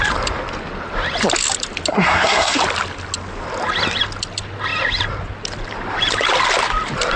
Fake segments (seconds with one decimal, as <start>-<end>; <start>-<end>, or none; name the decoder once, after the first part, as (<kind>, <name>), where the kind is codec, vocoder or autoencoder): 1.9-2.6 (codec, SNAC)